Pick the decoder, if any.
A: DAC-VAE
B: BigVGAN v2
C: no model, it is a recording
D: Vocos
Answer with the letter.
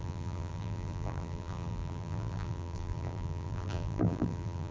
B